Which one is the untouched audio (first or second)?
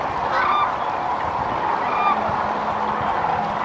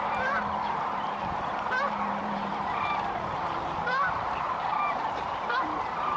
first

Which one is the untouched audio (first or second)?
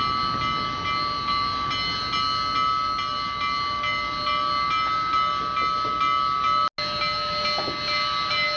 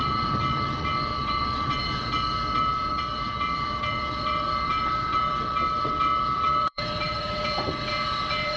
first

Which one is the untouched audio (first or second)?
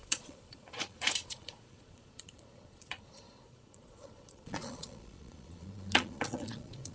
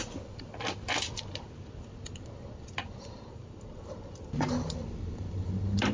second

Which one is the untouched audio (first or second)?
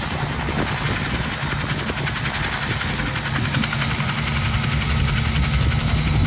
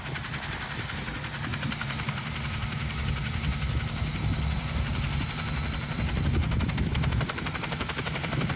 first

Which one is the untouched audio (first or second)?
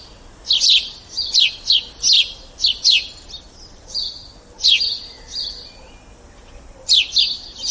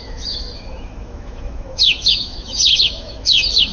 first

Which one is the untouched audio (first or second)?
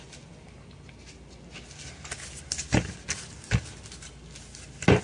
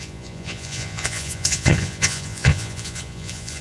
first